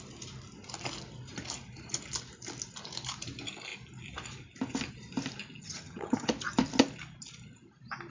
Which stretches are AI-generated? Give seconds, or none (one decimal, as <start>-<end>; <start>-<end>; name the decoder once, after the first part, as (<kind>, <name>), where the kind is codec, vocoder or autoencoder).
5.6-6.3 (vocoder, HiFi-GAN)